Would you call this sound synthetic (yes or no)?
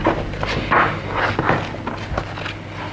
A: no